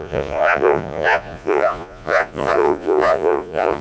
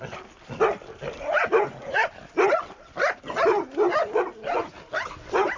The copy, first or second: first